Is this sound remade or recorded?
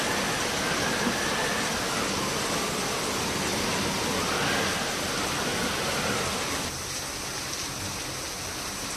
recorded